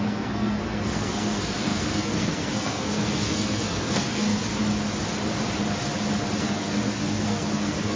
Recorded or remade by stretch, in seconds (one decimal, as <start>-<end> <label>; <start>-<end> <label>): 0.0-4.5 remade; 4.5-6.4 recorded; 6.4-8.0 remade